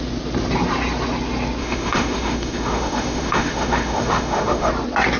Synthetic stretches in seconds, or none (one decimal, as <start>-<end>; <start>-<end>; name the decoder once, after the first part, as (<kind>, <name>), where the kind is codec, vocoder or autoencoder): 1.6-4.7 (autoencoder, DAC-VAE)